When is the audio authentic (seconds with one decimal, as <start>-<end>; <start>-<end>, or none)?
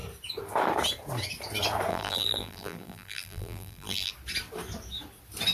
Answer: 0.0-1.9; 4.1-5.5